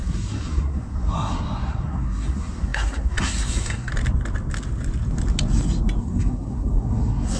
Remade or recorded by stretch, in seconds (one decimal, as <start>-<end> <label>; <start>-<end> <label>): 0.0-3.9 remade; 3.9-6.0 recorded; 6.0-7.4 remade